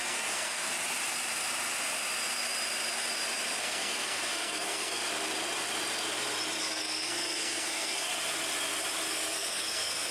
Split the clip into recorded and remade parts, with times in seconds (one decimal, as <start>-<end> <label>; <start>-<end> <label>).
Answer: 0.0-0.7 remade; 0.7-3.6 recorded; 3.6-5.0 remade; 5.0-6.6 recorded; 6.6-8.1 remade; 8.1-9.1 recorded; 9.1-10.1 remade